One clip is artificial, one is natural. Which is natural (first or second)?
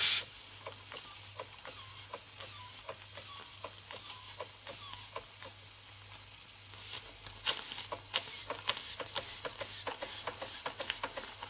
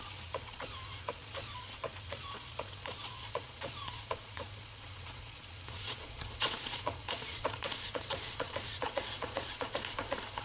first